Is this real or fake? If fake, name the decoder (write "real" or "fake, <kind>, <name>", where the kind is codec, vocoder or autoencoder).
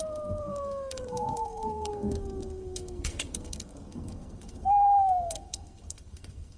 fake, codec, SNAC